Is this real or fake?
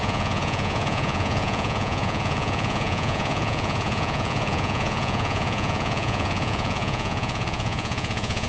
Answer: fake